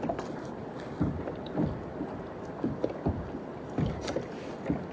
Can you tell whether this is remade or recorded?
remade